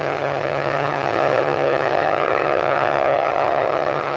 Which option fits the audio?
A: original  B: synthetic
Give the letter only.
B